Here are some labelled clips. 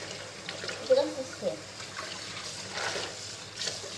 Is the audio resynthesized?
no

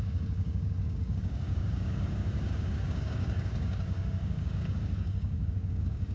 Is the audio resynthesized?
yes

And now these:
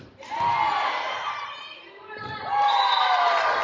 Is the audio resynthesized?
no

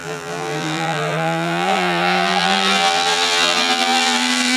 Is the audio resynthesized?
yes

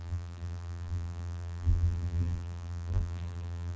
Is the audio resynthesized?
yes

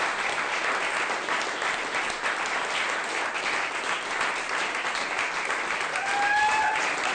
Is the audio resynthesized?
no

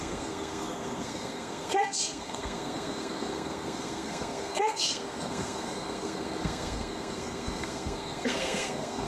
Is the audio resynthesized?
yes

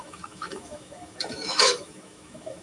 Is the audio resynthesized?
yes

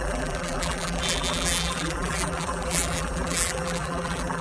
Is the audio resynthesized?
yes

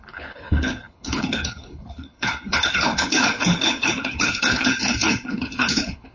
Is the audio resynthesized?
yes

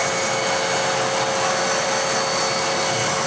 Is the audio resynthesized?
no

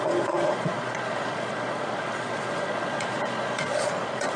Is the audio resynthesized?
yes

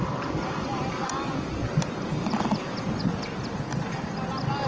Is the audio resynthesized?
no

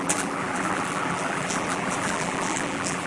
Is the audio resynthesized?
yes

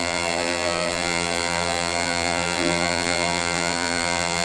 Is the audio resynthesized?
yes